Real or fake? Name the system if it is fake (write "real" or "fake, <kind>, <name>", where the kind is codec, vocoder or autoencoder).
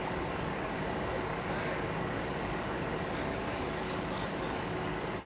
fake, codec, DAC